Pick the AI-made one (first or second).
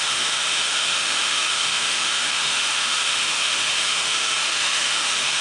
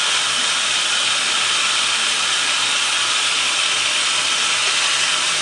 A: first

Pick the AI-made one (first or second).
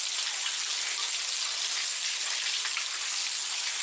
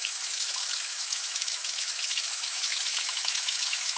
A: second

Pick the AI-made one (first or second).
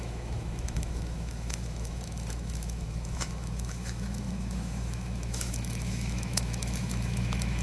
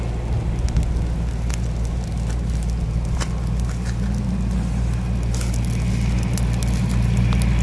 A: first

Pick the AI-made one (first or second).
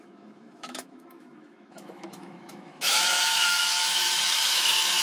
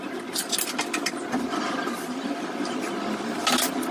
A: first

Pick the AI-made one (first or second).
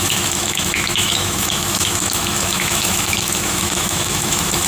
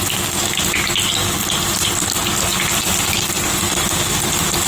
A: first